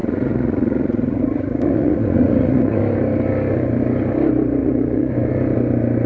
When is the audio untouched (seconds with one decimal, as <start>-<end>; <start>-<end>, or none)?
2.8-4.6; 5.1-6.1